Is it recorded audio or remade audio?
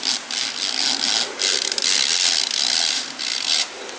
recorded